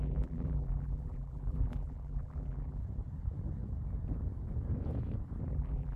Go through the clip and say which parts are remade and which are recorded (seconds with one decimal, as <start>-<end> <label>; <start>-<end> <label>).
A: 0.0-2.8 remade; 2.8-5.5 recorded; 5.5-6.0 remade